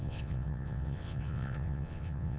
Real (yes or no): no